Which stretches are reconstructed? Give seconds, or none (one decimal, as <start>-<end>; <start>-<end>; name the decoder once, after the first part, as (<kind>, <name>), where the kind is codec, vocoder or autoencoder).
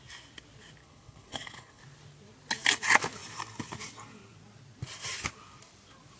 0.8-1.8 (codec, HILCodec)